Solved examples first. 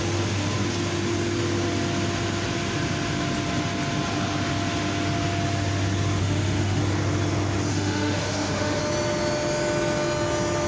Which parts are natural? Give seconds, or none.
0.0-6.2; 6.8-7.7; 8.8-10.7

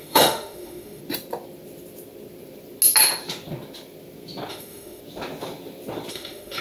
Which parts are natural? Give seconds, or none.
1.0-4.5; 5.0-6.1

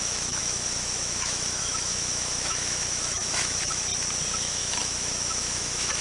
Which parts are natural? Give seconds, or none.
3.9-4.4

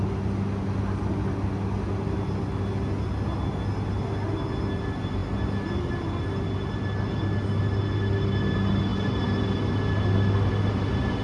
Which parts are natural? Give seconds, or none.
0.0-11.2

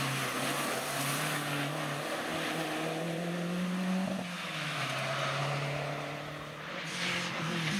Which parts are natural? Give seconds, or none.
0.0-4.3; 4.9-7.8

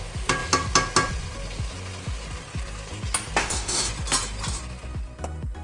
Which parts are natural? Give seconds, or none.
0.0-3.4; 3.9-5.6

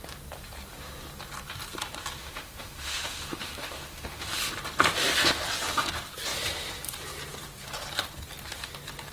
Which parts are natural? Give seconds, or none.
0.0-2.2; 4.3-9.1